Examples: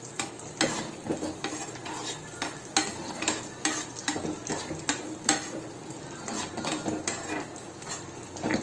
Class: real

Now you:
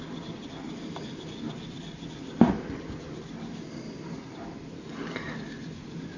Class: real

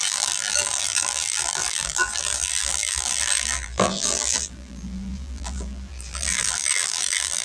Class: fake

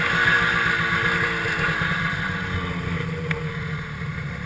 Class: real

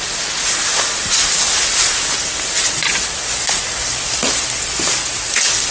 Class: real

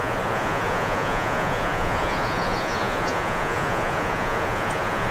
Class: fake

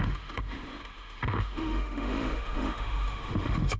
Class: fake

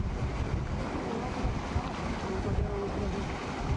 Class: real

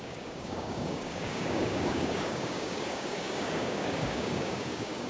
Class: fake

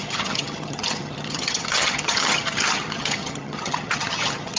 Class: fake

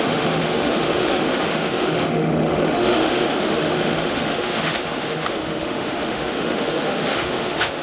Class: fake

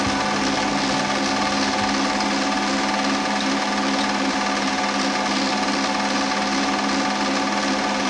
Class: real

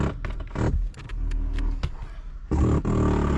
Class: real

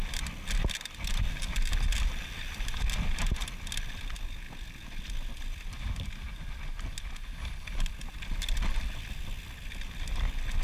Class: real